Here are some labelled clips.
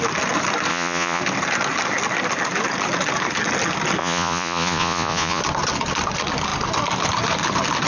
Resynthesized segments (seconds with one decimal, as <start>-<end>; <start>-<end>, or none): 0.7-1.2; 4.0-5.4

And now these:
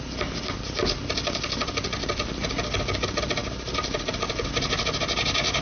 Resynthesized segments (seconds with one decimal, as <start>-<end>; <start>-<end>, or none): none

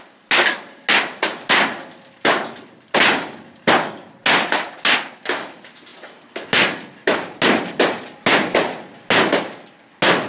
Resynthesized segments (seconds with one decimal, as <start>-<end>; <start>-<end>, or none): none